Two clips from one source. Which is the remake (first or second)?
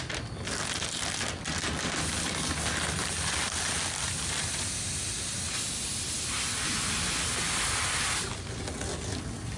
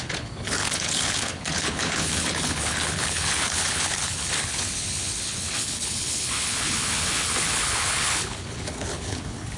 second